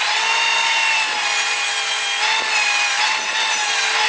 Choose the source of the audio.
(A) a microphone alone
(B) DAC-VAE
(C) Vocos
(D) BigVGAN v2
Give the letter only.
A